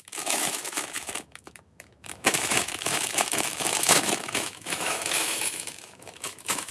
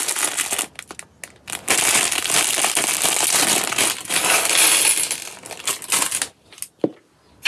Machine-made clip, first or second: first